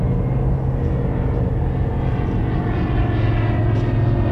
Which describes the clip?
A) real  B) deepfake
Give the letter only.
A